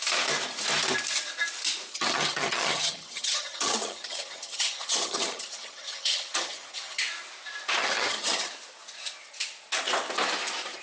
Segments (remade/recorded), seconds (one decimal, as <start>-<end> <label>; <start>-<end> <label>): 0.0-1.9 recorded; 1.9-7.0 remade; 7.0-7.8 recorded; 7.8-8.5 remade; 8.5-10.8 recorded